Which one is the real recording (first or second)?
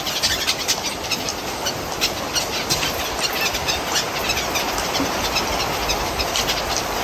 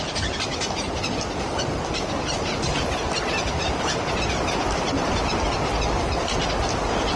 first